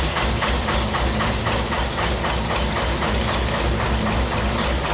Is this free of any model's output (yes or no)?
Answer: yes